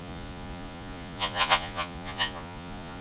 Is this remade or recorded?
remade